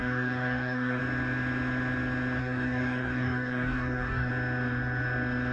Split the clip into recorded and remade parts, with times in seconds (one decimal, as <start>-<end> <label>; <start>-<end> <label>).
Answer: 0.0-1.0 remade; 1.0-2.4 recorded; 2.4-4.3 remade; 4.3-5.5 recorded